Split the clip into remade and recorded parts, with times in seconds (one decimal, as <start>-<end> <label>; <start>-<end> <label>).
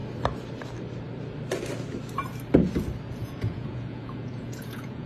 0.0-3.1 recorded; 3.1-5.1 remade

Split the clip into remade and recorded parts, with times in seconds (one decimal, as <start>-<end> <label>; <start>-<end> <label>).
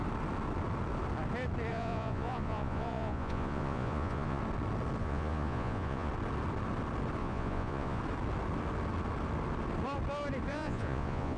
0.0-1.7 recorded; 1.7-4.4 remade; 4.4-5.0 recorded; 5.0-6.1 remade; 6.1-7.2 recorded; 7.2-8.0 remade; 8.0-10.5 recorded; 10.5-11.4 remade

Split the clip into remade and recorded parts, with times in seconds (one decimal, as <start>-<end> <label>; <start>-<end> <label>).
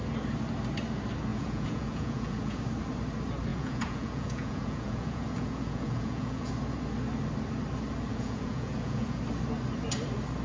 0.0-1.3 recorded; 1.3-2.6 remade; 2.6-3.5 recorded; 3.5-6.5 remade; 6.5-8.1 recorded; 8.1-9.2 remade; 9.2-10.4 recorded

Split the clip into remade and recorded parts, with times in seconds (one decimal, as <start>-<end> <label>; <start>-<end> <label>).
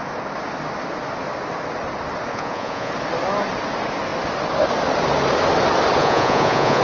0.0-2.3 recorded; 2.3-2.9 remade; 2.9-6.0 recorded; 6.0-6.8 remade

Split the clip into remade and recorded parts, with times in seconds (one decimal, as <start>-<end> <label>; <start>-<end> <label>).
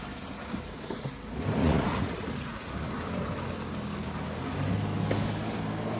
0.0-1.6 recorded; 1.6-2.7 remade; 2.7-6.0 recorded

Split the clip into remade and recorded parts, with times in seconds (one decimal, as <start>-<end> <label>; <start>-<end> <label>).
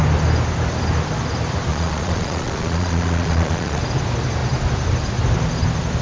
0.0-1.7 recorded; 1.7-3.8 remade; 3.8-6.0 recorded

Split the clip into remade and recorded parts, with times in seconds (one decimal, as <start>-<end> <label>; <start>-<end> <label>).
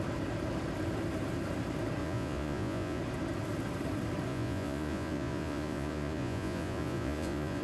0.0-2.0 recorded; 2.0-3.0 remade; 3.0-4.3 recorded; 4.3-7.6 remade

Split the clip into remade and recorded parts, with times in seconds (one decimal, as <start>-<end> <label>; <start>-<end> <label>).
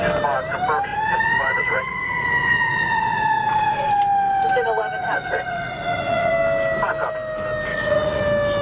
0.0-0.9 recorded; 0.9-3.9 remade; 3.9-5.0 recorded; 5.0-6.3 remade; 6.3-7.7 recorded; 7.7-8.2 remade; 8.2-8.6 recorded